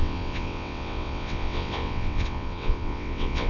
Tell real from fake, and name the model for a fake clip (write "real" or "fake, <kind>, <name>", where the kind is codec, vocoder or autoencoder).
fake, vocoder, WaveNeXt